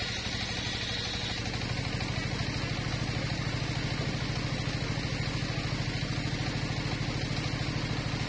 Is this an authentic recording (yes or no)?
yes